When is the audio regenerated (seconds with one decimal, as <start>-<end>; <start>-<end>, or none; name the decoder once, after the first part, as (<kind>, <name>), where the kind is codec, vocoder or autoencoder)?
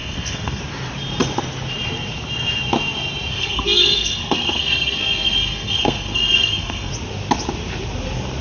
0.0-0.6 (codec, SNAC); 3.3-6.9